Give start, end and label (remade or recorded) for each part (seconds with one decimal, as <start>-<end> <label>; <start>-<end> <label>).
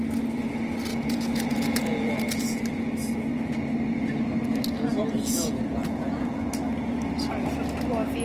0.0-0.9 recorded; 0.9-2.6 remade; 2.6-4.9 recorded; 4.9-6.5 remade; 6.5-8.2 recorded